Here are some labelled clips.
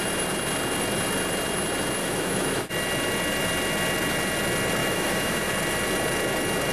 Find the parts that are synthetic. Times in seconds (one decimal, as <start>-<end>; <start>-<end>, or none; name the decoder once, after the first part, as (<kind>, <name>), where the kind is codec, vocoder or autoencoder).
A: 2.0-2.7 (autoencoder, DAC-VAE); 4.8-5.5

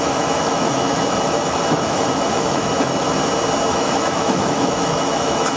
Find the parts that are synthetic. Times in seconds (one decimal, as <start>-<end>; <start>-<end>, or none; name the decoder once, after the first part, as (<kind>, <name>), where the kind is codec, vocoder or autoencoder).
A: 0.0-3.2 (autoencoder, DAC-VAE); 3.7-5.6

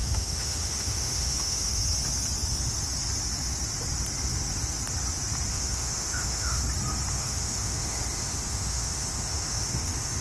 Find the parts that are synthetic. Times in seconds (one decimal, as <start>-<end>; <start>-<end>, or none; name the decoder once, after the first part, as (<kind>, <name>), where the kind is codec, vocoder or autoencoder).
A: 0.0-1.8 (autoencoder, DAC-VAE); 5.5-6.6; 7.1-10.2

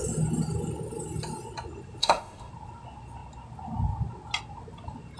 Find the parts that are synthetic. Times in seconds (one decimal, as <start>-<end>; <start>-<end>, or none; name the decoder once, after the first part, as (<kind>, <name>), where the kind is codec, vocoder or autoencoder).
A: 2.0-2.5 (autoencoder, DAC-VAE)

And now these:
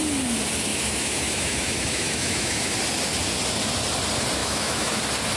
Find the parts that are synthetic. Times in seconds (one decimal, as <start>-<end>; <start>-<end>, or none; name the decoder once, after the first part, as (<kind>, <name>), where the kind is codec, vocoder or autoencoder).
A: 0.7-2.7 (autoencoder, DAC-VAE); 4.4-5.0

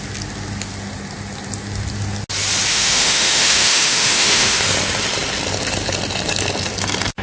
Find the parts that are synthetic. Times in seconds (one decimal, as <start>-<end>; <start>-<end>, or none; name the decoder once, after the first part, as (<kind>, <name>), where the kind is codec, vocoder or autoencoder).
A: 2.7-4.6 (autoencoder, DAC-VAE)

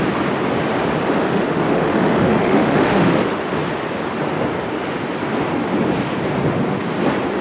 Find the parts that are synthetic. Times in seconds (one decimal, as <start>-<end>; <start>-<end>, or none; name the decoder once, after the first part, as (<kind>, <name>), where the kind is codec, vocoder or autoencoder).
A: 1.3-3.5 (autoencoder, DAC-VAE)

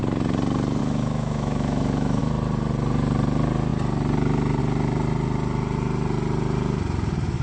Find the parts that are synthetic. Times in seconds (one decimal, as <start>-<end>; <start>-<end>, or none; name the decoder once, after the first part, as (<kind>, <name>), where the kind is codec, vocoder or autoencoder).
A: 0.8-2.2 (autoencoder, DAC-VAE)